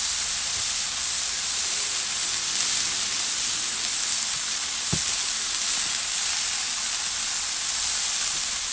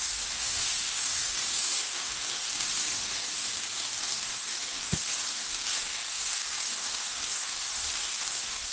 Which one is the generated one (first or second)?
second